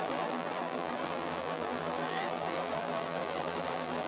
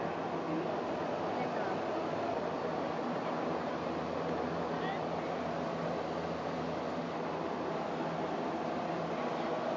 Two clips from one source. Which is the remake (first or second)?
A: first